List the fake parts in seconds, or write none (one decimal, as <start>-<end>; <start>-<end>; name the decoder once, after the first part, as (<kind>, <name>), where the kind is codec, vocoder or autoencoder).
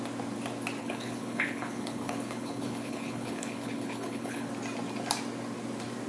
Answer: 0.8-4.5 (codec, HILCodec)